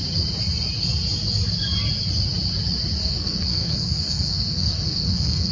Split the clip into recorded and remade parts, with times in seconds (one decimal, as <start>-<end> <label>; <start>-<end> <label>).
0.0-3.0 recorded; 3.0-5.5 remade